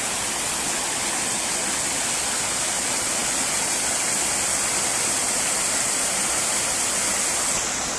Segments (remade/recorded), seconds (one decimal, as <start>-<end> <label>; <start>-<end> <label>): 0.0-8.0 recorded